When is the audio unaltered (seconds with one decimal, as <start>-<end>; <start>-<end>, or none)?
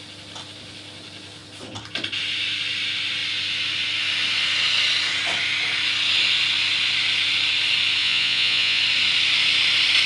0.0-8.0; 8.8-10.1